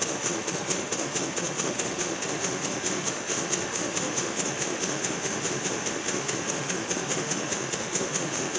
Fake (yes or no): yes